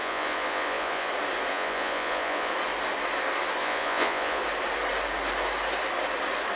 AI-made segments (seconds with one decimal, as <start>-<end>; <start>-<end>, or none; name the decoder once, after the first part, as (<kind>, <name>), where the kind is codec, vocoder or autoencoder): 0.0-1.1 (vocoder, Vocos); 1.5-2.5; 3.6-4.4